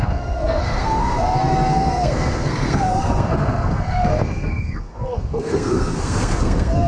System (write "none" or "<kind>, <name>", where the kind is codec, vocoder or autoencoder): codec, SNAC